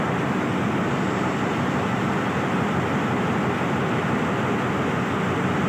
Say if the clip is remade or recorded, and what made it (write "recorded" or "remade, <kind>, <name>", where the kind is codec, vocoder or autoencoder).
recorded